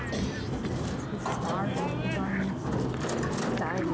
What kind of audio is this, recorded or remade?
recorded